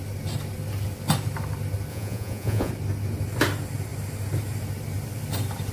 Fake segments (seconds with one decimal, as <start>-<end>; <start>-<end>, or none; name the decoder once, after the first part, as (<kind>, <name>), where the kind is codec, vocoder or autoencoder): 1.9-2.7 (vocoder, Vocos)